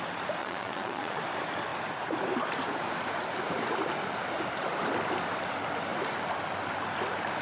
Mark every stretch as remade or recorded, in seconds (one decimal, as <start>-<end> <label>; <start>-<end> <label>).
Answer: 0.0-0.4 recorded; 0.4-1.2 remade; 1.2-7.4 recorded